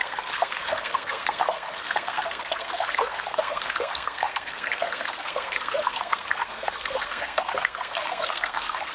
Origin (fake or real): fake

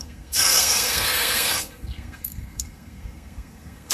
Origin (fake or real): fake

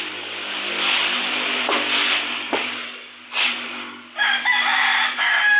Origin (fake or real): real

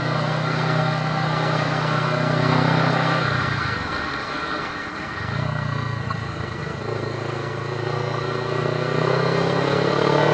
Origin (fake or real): fake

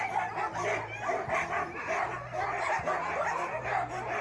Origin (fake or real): real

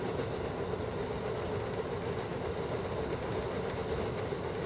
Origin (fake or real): real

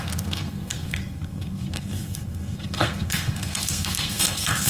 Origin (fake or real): fake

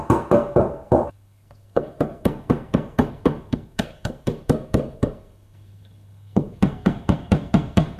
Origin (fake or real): fake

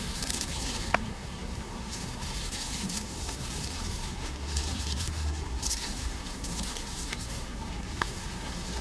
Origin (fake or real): fake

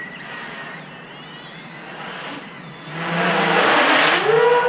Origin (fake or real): real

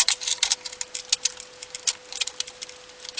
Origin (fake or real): real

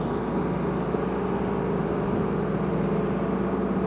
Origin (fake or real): real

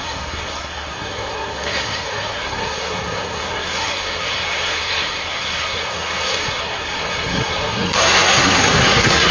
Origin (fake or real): fake